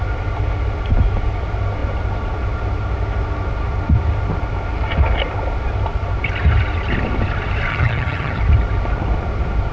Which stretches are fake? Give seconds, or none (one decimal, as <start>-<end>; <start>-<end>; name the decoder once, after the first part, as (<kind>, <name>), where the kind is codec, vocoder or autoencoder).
7.7-8.4 (vocoder, HiFi-GAN)